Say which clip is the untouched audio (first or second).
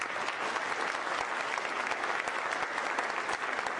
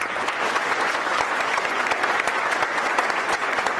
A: first